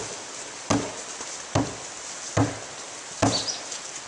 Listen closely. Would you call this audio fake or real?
real